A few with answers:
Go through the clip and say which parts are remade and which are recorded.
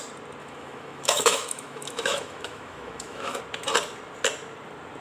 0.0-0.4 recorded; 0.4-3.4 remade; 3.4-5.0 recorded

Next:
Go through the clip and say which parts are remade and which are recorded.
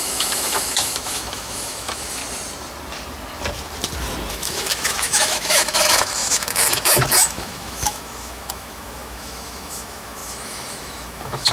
0.0-2.2 remade; 2.2-4.3 recorded; 4.3-11.5 remade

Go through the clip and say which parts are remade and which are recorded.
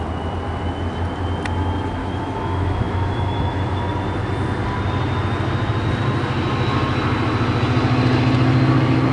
0.0-2.0 recorded; 2.0-3.9 remade; 3.9-9.1 recorded